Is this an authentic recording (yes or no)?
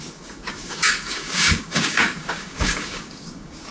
no